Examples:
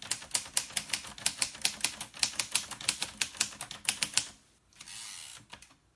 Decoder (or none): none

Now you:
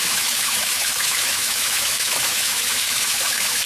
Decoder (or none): autoencoder, DAC-VAE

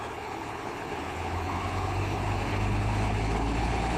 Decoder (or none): codec, HILCodec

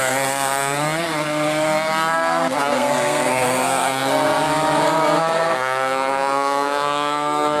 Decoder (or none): codec, SNAC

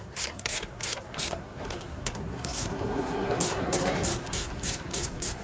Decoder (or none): codec, SNAC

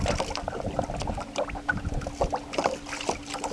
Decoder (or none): none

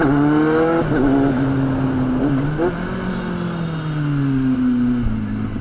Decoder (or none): none